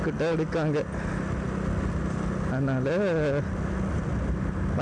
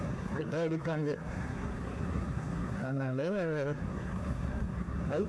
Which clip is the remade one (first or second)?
second